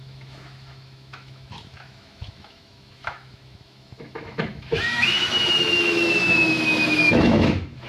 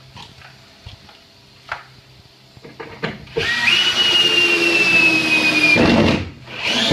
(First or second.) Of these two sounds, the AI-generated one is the first